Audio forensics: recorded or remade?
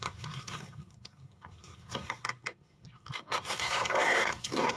remade